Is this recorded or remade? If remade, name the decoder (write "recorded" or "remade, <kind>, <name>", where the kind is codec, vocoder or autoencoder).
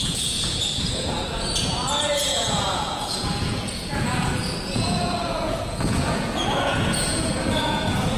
remade, vocoder, Vocos